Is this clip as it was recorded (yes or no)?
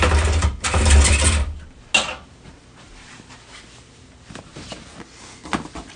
yes